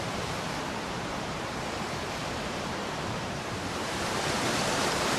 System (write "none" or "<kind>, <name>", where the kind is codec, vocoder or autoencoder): vocoder, BigVGAN v2